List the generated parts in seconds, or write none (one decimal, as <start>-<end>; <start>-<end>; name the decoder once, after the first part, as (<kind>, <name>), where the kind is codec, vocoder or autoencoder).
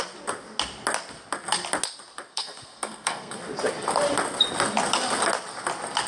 2.3-3.4 (codec, SNAC)